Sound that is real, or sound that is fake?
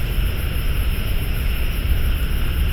real